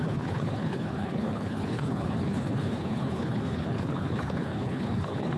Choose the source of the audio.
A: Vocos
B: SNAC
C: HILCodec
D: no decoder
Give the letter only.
C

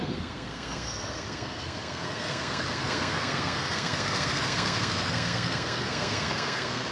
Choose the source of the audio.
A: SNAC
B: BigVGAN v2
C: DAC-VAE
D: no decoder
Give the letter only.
A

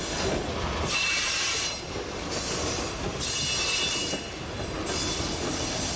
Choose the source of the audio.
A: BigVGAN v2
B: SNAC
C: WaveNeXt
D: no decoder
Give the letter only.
D